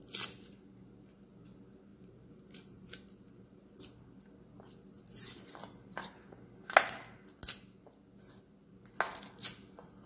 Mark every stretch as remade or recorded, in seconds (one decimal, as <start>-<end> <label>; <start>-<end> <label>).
0.0-1.9 recorded; 1.9-3.8 remade; 3.8-10.1 recorded